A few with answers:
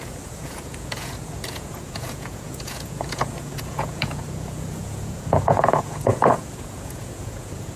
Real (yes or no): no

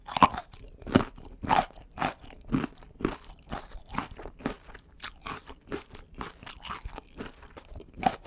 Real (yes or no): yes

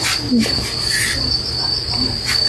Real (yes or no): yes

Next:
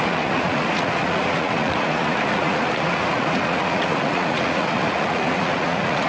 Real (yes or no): no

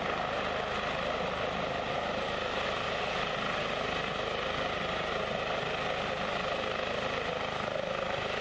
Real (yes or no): yes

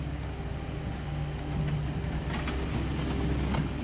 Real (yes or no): yes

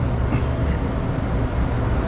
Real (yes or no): yes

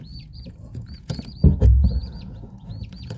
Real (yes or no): no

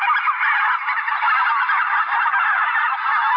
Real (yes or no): yes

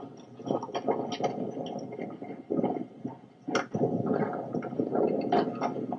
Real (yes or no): yes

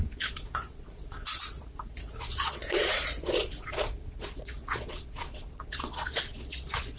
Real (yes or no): no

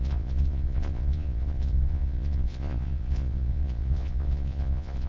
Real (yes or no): no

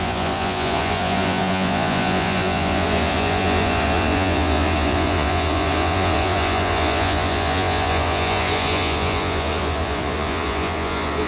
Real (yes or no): no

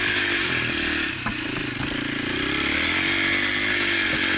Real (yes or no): yes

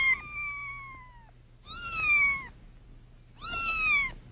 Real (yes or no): yes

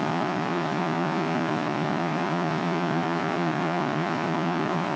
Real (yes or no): no